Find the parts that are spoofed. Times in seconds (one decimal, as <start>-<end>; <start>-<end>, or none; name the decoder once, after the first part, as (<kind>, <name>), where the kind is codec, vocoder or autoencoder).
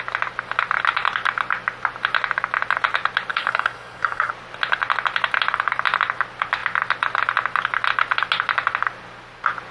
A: 3.3-4.3 (codec, DAC)